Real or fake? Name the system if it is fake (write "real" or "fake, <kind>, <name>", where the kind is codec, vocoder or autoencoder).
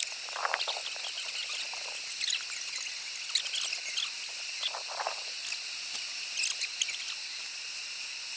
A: real